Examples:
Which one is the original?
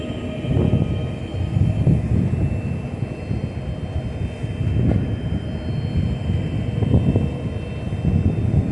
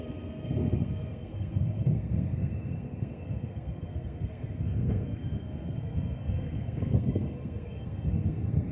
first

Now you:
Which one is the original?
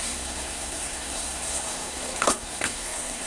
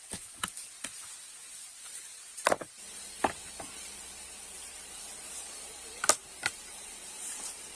second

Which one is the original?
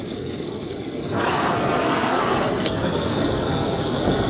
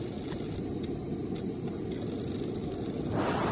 second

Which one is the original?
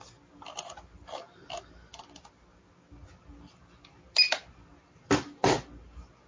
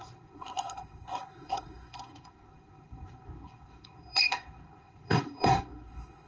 first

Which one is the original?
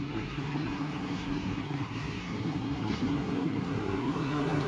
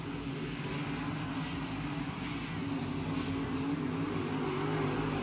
second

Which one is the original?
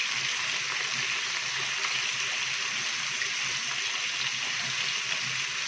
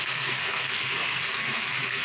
first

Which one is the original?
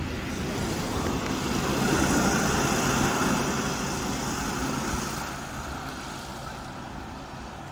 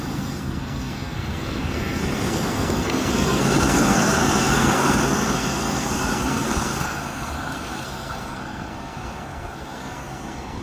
first